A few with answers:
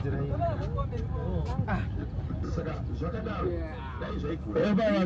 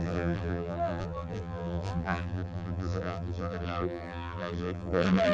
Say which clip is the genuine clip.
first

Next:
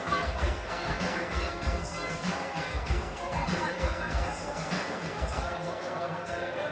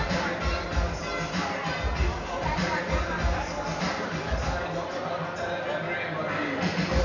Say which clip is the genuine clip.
second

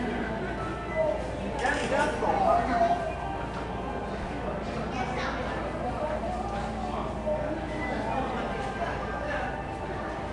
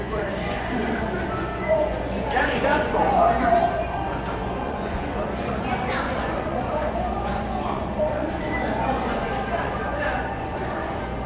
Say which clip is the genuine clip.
first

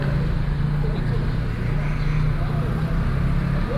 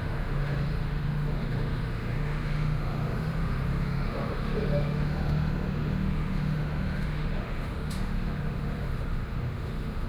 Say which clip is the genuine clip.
first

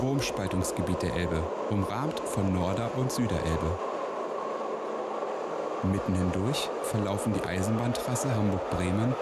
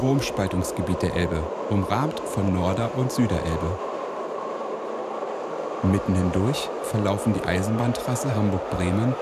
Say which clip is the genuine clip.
first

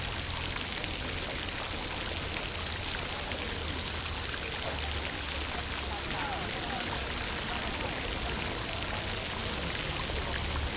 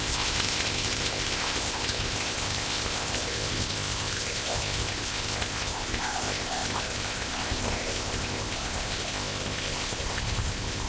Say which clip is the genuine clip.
first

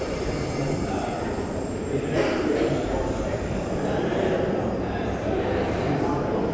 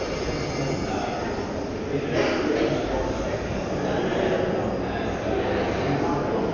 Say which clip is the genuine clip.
second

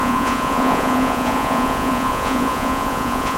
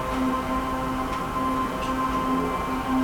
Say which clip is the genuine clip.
second